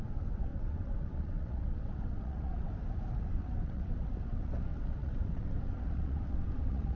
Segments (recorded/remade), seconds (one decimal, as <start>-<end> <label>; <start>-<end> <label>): 0.0-2.7 remade; 2.7-3.2 recorded; 3.2-7.0 remade

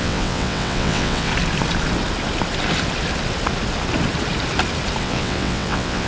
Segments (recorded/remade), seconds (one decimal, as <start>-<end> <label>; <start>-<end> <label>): 0.0-1.3 remade; 1.3-5.0 recorded; 5.0-6.1 remade

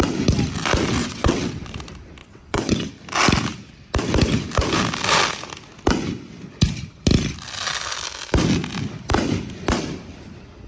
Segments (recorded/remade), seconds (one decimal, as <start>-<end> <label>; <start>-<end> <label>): 0.0-1.0 recorded; 1.0-1.7 remade; 1.7-2.2 recorded; 2.2-2.9 remade; 2.9-10.7 recorded

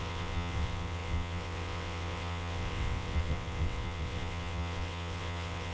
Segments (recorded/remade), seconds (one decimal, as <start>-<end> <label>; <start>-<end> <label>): 0.0-5.7 remade

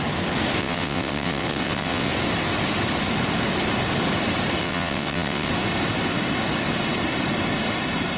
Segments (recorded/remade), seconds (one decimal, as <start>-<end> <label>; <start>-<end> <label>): 0.0-0.6 recorded; 0.6-2.1 remade; 2.1-4.6 recorded; 4.6-5.5 remade; 5.5-8.2 recorded

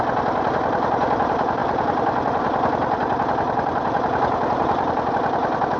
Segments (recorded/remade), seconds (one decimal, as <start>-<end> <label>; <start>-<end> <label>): 0.0-5.8 recorded

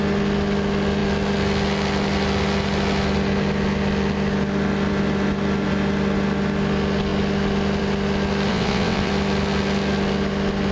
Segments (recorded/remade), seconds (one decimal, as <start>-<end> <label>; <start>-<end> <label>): 0.0-8.5 recorded; 8.5-9.1 remade; 9.1-10.7 recorded